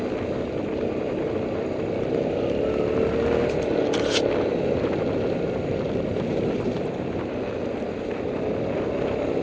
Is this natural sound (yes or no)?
yes